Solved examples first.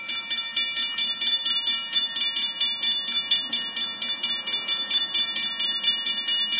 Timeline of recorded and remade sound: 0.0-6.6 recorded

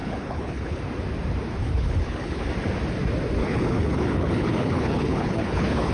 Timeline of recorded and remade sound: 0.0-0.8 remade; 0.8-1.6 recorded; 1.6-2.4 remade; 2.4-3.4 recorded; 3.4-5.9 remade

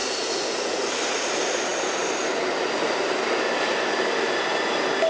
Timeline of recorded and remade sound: 0.0-0.9 remade; 0.9-5.1 recorded